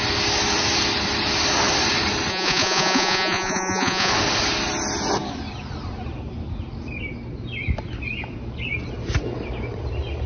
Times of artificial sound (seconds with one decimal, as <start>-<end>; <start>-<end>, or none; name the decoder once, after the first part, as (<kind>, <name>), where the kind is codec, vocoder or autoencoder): 2.3-4.1 (vocoder, Vocos)